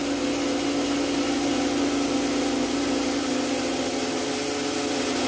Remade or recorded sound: recorded